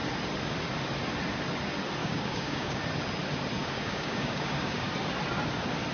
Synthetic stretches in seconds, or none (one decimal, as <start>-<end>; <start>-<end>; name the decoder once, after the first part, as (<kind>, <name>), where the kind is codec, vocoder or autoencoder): 2.0-2.8 (codec, DAC); 3.6-4.9